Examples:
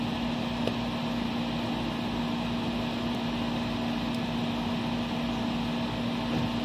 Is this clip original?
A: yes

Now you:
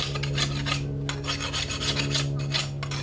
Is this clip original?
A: yes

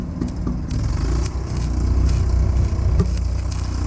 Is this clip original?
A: yes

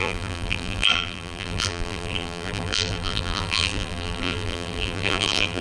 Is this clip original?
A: no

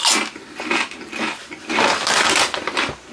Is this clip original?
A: yes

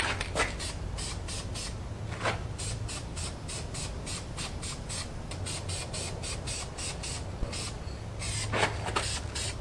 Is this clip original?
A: yes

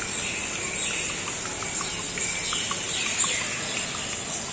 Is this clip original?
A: yes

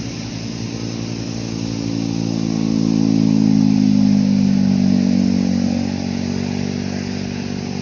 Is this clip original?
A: yes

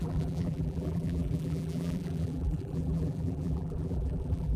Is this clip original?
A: no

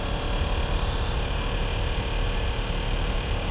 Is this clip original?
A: yes